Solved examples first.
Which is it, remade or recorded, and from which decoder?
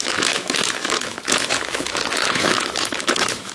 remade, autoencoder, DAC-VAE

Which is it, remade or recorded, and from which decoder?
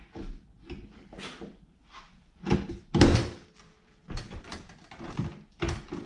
recorded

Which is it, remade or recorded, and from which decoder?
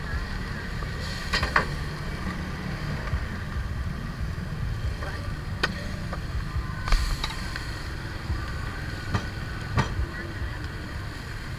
recorded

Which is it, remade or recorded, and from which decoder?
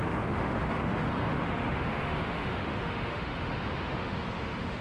remade, autoencoder, DAC-VAE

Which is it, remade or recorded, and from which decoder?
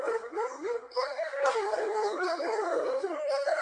remade, codec, SNAC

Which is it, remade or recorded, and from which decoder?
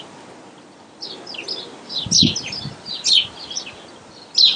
recorded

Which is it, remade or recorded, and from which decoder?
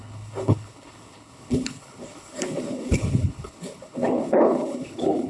remade, codec, HILCodec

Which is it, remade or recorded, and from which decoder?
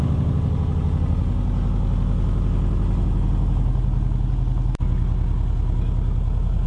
recorded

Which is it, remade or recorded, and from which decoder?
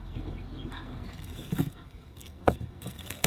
remade, codec, SNAC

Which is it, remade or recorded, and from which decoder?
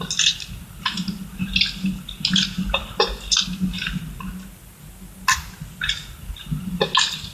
recorded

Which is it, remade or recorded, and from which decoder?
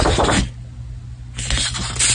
recorded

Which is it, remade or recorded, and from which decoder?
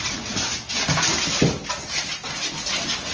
recorded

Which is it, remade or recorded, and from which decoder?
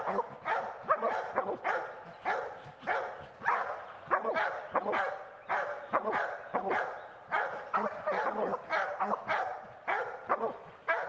recorded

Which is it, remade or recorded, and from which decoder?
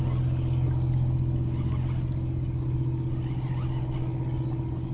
recorded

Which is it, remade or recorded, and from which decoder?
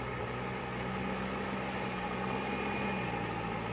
recorded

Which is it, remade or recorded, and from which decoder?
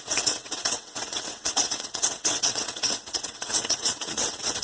remade, vocoder, WaveNeXt